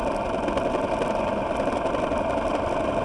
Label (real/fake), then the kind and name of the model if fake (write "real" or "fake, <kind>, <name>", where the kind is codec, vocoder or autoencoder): real